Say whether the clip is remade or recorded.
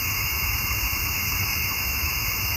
remade